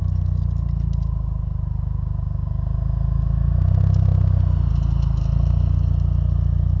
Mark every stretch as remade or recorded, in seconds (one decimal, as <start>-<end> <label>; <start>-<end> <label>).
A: 0.0-6.8 recorded